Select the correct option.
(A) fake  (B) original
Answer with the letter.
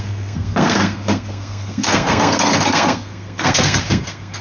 A